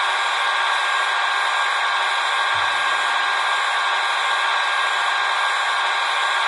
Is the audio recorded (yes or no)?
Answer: yes